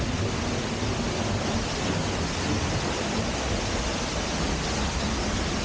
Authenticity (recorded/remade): recorded